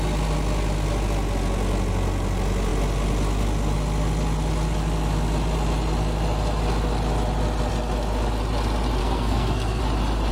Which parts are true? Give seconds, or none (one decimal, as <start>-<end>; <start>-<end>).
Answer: 0.0-9.0; 9.8-10.3